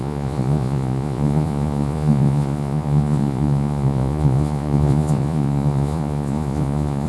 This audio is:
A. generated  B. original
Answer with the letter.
A